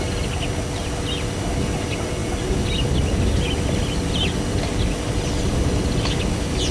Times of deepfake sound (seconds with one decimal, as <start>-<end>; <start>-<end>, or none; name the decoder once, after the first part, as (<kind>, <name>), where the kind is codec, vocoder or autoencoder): none

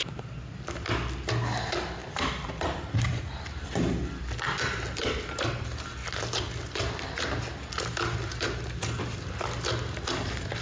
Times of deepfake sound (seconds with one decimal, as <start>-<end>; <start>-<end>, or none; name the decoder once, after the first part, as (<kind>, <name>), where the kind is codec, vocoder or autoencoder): 2.0-4.2 (vocoder, BigVGAN v2)